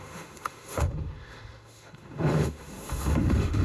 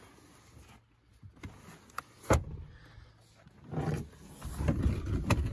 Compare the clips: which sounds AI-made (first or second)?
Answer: first